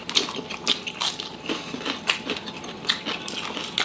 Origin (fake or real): real